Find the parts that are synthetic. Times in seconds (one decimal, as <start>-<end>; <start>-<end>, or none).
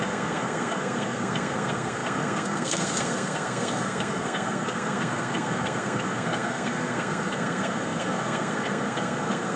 0.0-9.6